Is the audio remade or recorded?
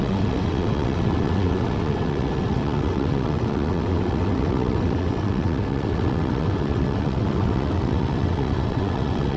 remade